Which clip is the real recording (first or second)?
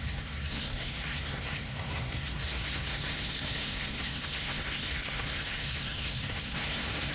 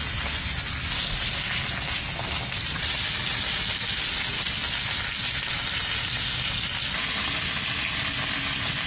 second